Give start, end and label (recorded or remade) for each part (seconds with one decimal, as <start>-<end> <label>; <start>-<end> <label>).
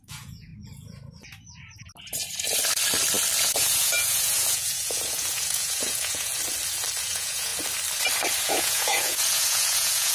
0.0-0.5 remade; 0.5-3.4 recorded; 3.4-6.3 remade; 6.3-7.0 recorded; 7.0-7.5 remade; 7.5-8.4 recorded; 8.4-10.1 remade